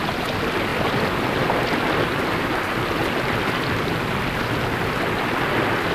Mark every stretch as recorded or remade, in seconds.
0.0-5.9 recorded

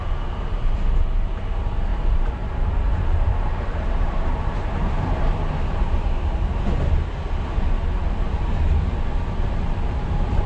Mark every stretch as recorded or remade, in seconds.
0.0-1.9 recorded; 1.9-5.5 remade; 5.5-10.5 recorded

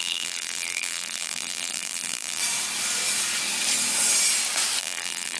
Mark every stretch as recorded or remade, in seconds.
0.0-2.4 remade; 2.4-4.8 recorded; 4.8-5.4 remade

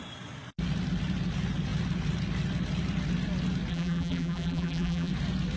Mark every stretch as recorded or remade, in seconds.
0.0-3.7 recorded; 3.7-5.1 remade; 5.1-5.6 recorded

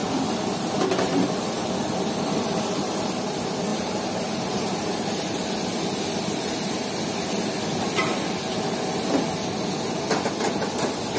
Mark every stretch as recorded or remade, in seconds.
0.0-3.7 recorded; 3.7-5.2 remade; 5.2-11.2 recorded

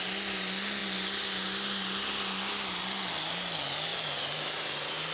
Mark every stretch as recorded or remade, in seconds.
0.0-3.9 recorded; 3.9-5.1 remade